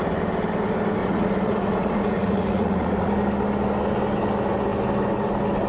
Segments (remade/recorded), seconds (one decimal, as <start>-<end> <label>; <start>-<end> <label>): 0.0-1.0 recorded; 1.0-3.1 remade; 3.1-5.7 recorded